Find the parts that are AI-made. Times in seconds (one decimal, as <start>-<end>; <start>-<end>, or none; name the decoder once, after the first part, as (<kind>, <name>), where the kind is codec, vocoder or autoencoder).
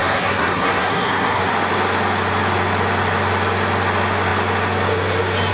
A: 0.0-1.5 (codec, SNAC)